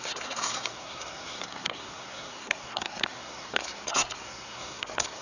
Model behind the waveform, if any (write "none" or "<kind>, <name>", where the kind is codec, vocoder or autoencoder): codec, SNAC